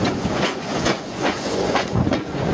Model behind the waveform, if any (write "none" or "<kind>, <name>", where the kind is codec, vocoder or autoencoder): vocoder, Vocos